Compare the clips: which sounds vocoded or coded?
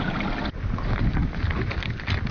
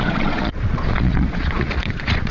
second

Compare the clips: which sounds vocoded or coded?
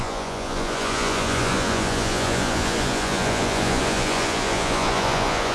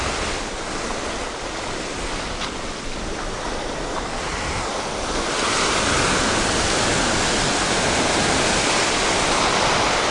first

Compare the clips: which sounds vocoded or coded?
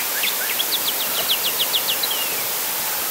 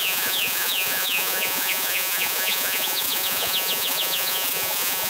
second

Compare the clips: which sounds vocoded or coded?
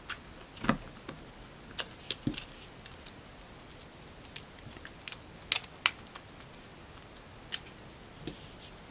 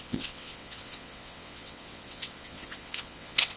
second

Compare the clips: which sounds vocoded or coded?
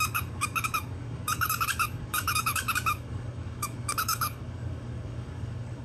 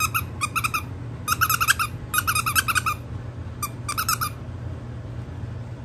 first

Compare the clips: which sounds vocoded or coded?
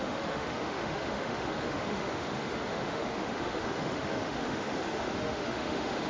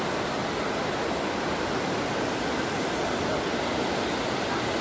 first